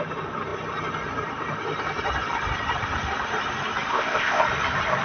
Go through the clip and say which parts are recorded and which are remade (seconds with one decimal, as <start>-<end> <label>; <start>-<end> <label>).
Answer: 0.0-3.9 recorded; 3.9-4.4 remade; 4.4-5.0 recorded